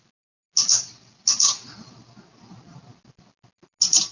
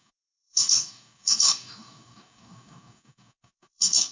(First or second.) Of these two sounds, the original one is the first